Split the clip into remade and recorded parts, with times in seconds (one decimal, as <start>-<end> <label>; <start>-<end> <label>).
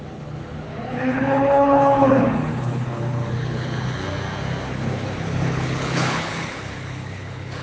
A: 0.0-4.0 remade; 4.0-4.7 recorded; 4.7-7.6 remade